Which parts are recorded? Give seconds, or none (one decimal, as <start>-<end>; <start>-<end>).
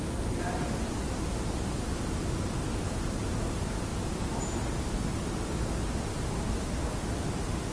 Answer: 0.0-7.7